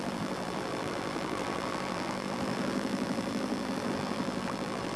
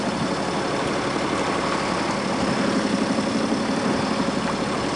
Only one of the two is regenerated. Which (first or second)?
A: first